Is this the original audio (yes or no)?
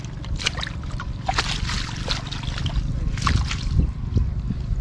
yes